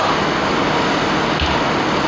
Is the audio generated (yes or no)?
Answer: no